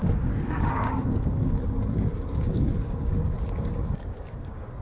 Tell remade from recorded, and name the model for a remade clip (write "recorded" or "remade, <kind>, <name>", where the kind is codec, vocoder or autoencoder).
remade, codec, DAC